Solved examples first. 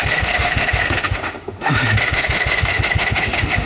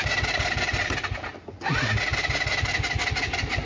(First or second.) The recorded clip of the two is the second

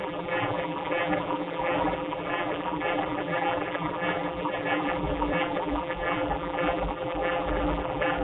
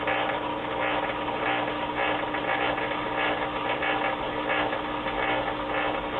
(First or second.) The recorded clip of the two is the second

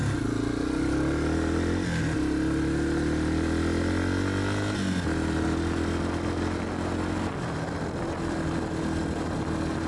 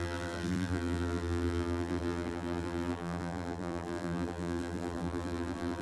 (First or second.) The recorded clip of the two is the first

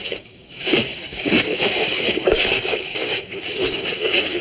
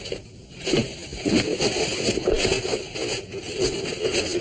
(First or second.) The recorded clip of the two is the second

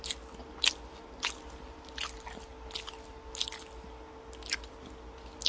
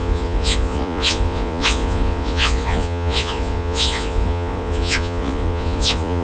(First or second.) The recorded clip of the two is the first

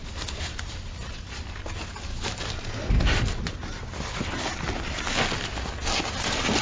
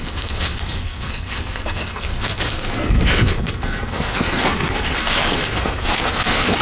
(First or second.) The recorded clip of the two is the first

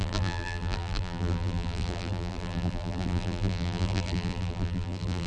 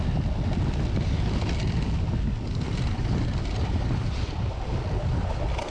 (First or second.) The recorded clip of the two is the second